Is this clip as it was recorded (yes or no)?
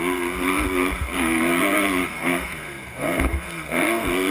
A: no